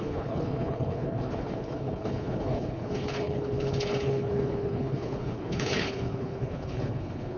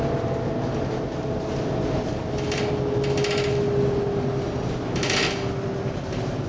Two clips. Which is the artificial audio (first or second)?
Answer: first